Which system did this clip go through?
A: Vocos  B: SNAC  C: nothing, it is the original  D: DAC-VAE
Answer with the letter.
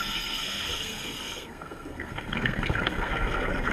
B